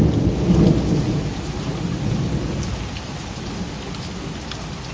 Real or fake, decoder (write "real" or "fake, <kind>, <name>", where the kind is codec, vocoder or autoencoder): real